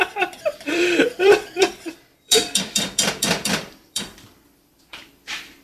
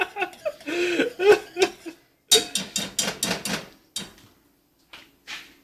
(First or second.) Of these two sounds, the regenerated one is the first